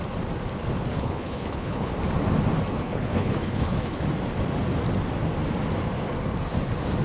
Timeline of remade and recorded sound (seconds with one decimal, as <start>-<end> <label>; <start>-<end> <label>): 0.0-0.9 recorded; 0.9-1.9 remade; 1.9-2.7 recorded; 2.7-4.0 remade; 4.0-7.0 recorded